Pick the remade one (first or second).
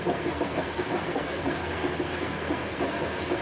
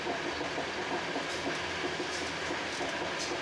first